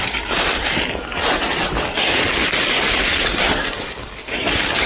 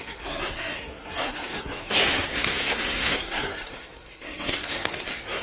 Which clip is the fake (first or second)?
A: second